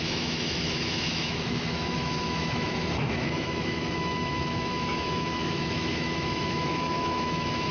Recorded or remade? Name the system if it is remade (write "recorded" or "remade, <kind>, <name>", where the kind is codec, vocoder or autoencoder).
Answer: remade, autoencoder, DAC-VAE